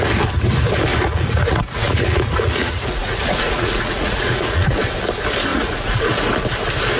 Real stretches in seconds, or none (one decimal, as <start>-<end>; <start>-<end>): 0.0-0.9; 4.8-5.5; 6.1-7.0